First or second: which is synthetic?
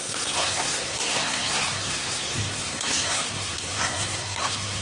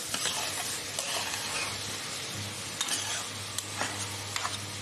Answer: first